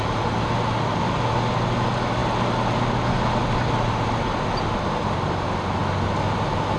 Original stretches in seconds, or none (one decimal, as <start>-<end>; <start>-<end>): 0.0-6.8